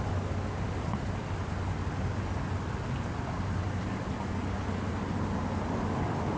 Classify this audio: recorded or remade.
recorded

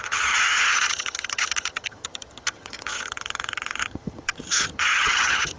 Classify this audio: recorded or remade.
remade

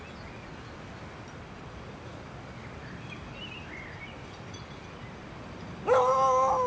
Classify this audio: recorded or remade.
recorded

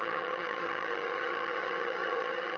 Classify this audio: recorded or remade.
remade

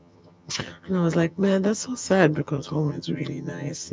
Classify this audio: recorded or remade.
remade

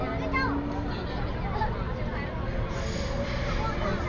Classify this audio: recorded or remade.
recorded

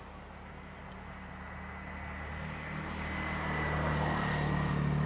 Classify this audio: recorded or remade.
recorded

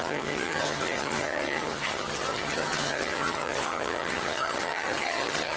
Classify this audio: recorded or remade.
remade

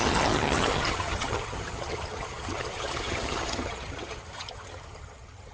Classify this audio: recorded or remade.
remade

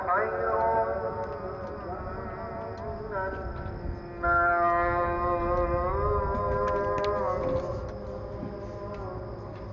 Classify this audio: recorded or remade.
recorded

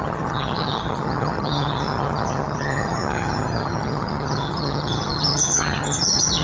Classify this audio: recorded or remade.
remade